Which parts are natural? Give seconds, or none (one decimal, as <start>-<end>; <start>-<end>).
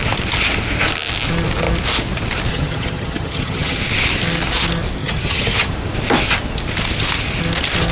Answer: 0.0-2.5; 3.8-5.0; 5.7-7.9